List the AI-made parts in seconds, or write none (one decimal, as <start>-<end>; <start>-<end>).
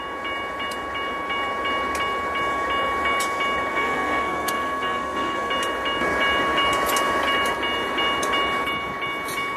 3.7-5.5